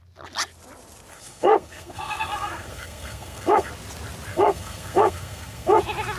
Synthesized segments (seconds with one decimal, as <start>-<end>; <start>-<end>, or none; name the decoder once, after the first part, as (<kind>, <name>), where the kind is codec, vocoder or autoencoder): 1.1-3.7 (codec, SNAC); 4.3-5.8